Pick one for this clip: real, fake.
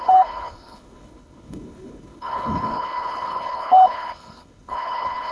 fake